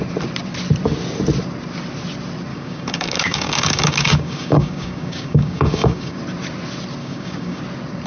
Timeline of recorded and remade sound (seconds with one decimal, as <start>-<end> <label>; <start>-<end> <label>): 0.0-2.5 recorded; 2.5-6.2 remade; 6.2-7.0 recorded; 7.0-7.6 remade; 7.6-8.1 recorded